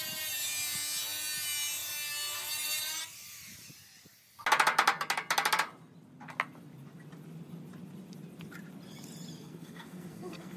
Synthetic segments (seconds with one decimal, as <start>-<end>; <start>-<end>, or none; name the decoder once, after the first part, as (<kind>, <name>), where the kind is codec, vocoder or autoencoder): 9.4-10.6 (codec, SNAC)